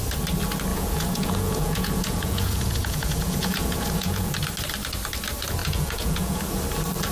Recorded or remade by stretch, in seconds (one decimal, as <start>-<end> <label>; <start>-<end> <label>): 0.0-0.7 recorded; 0.7-4.3 remade; 4.3-5.6 recorded; 5.6-6.6 remade; 6.6-7.1 recorded